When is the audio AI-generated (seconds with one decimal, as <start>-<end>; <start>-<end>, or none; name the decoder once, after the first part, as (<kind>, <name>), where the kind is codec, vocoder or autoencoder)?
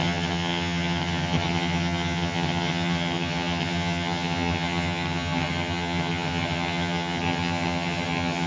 0.0-8.5 (vocoder, HiFi-GAN)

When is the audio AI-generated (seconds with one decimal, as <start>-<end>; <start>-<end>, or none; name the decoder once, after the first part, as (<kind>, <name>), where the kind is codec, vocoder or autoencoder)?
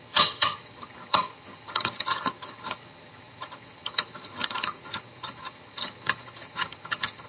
0.0-7.3 (vocoder, HiFi-GAN)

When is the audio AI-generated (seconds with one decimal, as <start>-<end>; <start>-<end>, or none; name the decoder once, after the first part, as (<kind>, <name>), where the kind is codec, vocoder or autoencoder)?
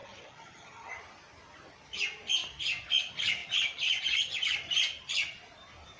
0.0-1.0 (vocoder, HiFi-GAN)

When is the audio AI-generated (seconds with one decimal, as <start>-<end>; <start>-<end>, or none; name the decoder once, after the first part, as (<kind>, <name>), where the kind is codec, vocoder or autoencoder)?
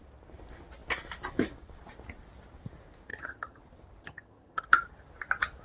3.1-3.6 (vocoder, HiFi-GAN); 4.0-4.6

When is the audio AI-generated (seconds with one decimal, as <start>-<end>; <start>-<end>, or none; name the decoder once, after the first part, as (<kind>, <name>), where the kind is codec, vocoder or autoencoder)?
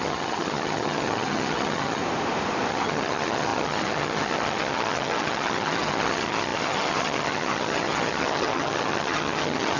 0.0-2.0 (vocoder, HiFi-GAN); 2.7-9.8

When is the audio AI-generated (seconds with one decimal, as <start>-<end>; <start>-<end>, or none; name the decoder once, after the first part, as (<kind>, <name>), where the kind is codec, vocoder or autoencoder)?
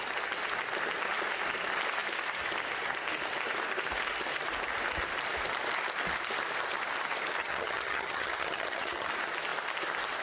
7.4-9.1 (vocoder, HiFi-GAN)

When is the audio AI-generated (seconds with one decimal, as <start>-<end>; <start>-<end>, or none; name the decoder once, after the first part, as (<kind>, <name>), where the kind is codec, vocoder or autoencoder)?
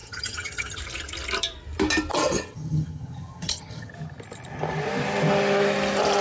0.0-0.8 (vocoder, HiFi-GAN); 2.1-3.9